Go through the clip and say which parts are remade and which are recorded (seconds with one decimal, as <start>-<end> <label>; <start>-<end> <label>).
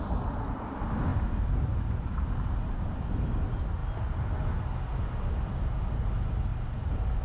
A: 0.0-1.1 recorded; 1.1-3.2 remade; 3.2-6.5 recorded; 6.5-7.2 remade